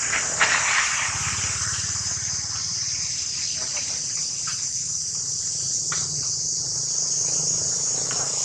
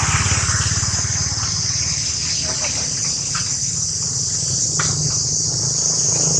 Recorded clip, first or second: second